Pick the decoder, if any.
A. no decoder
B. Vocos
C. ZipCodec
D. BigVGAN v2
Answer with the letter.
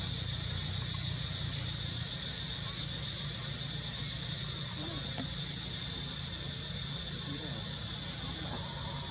A